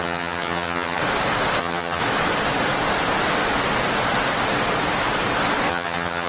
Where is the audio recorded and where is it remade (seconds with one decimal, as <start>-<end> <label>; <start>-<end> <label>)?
0.0-1.0 remade; 1.0-1.6 recorded; 1.6-2.0 remade; 2.0-5.7 recorded; 5.7-6.3 remade